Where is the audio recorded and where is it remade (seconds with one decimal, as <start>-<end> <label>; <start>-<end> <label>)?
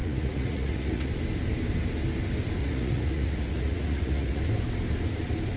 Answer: 0.0-1.1 remade; 1.1-2.6 recorded; 2.6-4.4 remade; 4.4-5.6 recorded